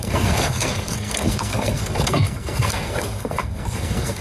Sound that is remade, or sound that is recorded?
remade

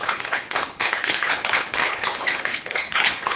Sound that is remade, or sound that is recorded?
remade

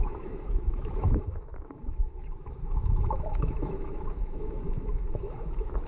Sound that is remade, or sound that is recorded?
remade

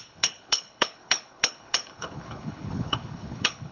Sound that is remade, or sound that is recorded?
remade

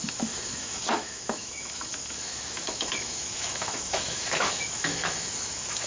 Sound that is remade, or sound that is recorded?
remade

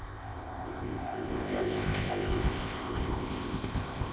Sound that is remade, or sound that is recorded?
remade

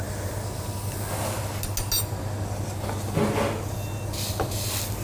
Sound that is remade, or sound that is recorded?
recorded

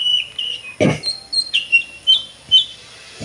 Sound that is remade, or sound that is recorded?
recorded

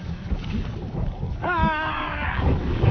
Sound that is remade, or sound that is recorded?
remade